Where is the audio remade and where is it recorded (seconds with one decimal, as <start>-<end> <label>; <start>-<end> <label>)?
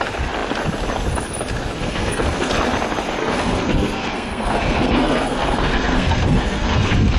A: 0.0-1.8 recorded; 1.8-2.5 remade; 2.5-3.2 recorded; 3.2-7.2 remade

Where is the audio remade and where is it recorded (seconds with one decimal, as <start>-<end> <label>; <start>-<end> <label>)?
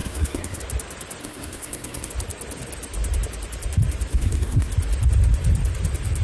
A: 0.0-0.6 remade; 0.6-1.2 recorded; 1.2-2.1 remade; 2.1-4.1 recorded; 4.1-4.7 remade; 4.7-6.2 recorded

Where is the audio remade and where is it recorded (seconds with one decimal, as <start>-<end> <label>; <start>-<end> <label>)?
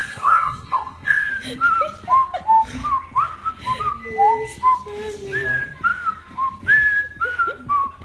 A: 0.0-1.3 remade; 1.3-8.0 recorded